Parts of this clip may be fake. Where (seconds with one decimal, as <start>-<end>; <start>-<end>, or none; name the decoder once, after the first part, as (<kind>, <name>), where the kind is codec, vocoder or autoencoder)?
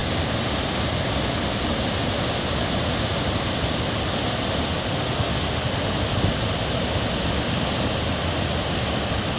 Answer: none